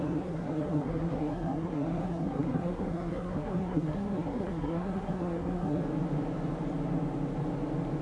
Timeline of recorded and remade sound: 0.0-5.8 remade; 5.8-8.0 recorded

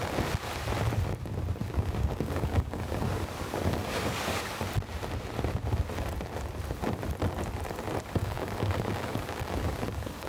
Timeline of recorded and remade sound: 0.0-1.6 recorded; 1.6-4.6 remade; 4.6-8.2 recorded; 8.2-10.3 remade

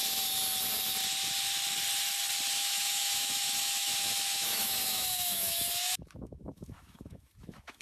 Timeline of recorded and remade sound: 0.0-2.5 recorded; 2.5-7.8 remade